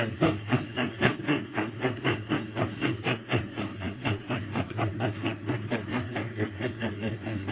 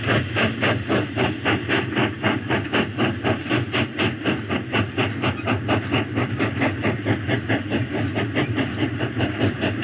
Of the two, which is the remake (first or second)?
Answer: first